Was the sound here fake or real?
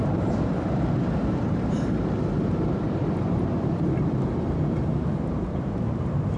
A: fake